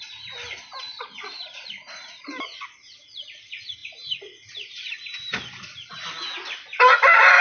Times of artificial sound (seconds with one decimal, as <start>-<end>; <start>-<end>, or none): none